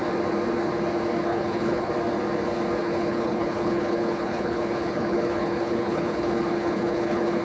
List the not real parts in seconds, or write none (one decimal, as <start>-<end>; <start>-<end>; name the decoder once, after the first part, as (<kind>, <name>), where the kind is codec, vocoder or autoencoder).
1.3-1.9 (codec, HILCodec); 2.8-7.4